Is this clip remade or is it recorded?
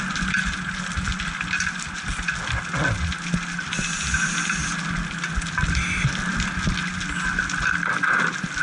recorded